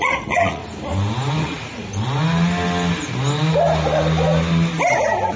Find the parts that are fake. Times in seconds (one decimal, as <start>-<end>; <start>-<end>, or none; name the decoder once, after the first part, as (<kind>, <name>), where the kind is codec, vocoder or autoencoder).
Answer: 0.0-0.6 (vocoder, Vocos); 1.4-1.9